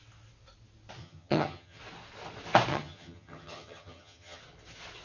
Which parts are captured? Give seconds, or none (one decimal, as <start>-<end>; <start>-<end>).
0.0-1.0; 1.8-2.7; 4.4-5.0

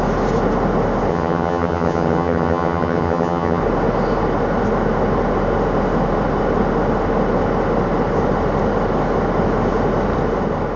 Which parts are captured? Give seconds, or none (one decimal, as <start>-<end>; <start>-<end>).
0.0-1.1; 3.6-10.8

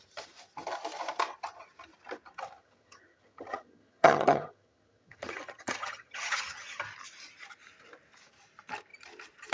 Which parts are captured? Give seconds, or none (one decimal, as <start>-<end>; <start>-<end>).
0.0-2.6; 6.8-9.5

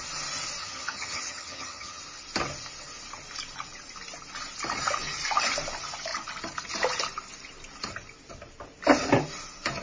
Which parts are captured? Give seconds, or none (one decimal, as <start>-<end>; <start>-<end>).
0.0-0.6; 2.0-9.8

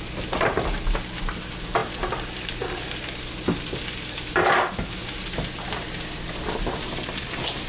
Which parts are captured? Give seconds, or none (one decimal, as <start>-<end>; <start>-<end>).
0.0-7.7

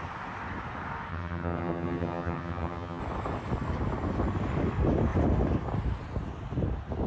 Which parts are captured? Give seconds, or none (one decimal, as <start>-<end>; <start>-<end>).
0.0-1.1; 3.0-7.1